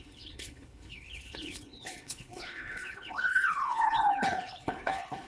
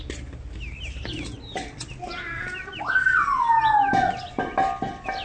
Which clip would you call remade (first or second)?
first